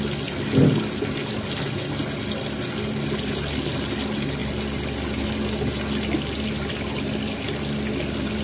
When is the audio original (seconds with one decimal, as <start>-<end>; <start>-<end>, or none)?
0.0-8.4